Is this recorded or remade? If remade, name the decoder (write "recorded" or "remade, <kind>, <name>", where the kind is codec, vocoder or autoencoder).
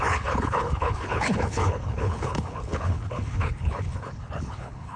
remade, codec, HILCodec